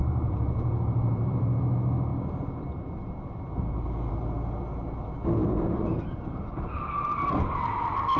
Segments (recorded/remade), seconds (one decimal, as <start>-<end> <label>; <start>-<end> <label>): 0.0-1.6 remade; 1.6-5.4 recorded; 5.4-6.8 remade; 6.8-8.2 recorded